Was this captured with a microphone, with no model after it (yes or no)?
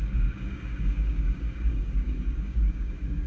no